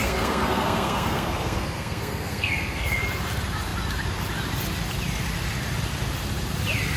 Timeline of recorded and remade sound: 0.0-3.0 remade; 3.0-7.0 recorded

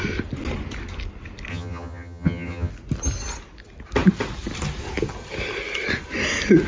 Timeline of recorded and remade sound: 0.0-1.5 recorded; 1.5-2.7 remade; 2.7-6.7 recorded

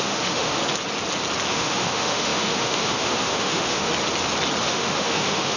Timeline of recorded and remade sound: 0.0-0.6 remade; 0.6-1.5 recorded; 1.5-3.9 remade; 3.9-4.6 recorded; 4.6-5.6 remade

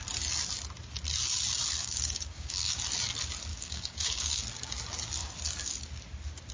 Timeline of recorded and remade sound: 0.0-1.8 recorded; 1.8-2.7 remade; 2.7-3.5 recorded; 3.5-4.4 remade; 4.4-6.5 recorded

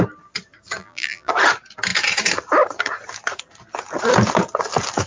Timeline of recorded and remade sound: 0.0-0.8 recorded; 0.8-1.3 remade; 1.3-5.1 recorded

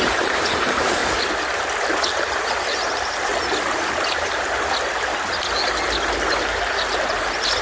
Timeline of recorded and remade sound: 0.0-1.0 remade; 1.0-1.9 recorded; 1.9-3.3 remade; 3.3-6.7 recorded; 6.7-7.6 remade

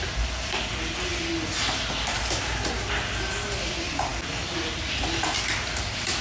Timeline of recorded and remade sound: 0.0-6.2 recorded

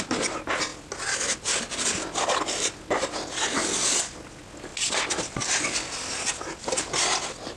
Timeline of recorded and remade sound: 0.0-7.6 recorded